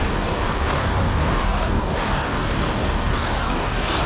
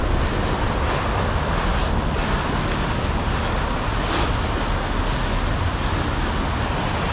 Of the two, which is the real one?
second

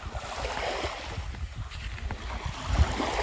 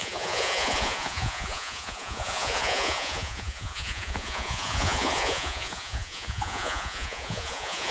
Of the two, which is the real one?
first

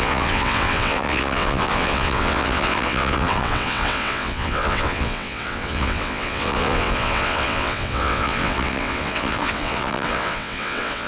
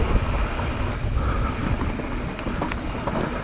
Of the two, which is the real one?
second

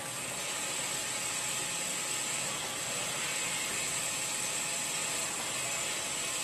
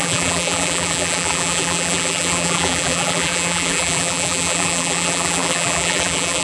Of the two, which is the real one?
first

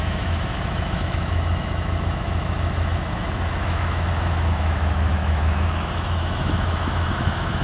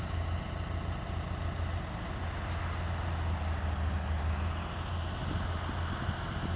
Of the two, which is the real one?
second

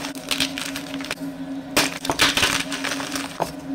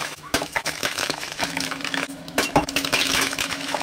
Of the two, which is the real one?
first